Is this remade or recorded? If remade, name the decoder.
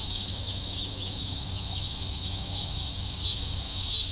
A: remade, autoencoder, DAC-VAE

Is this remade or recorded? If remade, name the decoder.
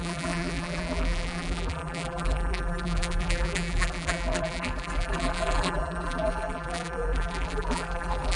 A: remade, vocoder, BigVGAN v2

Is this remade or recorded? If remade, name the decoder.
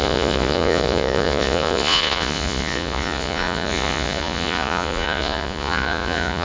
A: remade, vocoder, Vocos